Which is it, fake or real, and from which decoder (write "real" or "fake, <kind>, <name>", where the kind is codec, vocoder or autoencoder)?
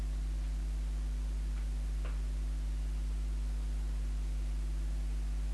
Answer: real